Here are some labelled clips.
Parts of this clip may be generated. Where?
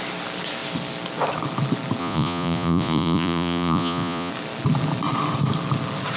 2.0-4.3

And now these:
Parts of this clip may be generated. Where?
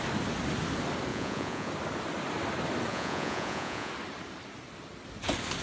1.1-1.7; 2.9-3.9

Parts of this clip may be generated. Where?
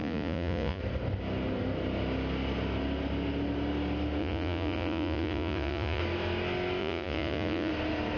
0.0-0.8; 4.2-6.0; 6.8-7.7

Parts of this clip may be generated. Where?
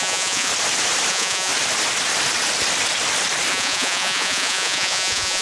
0.0-0.5; 1.1-1.5; 3.5-5.4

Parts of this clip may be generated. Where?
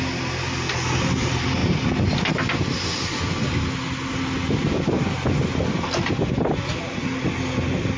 none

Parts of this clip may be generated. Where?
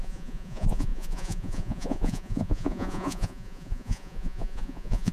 0.0-5.1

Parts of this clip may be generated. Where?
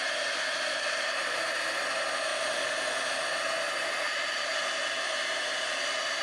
none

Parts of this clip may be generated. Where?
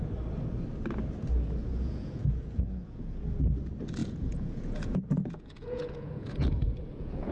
1.6-3.2; 4.0-7.3